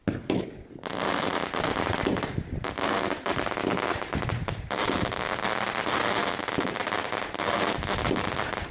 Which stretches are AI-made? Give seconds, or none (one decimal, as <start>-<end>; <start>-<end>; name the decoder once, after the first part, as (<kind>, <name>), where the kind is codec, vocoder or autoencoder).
none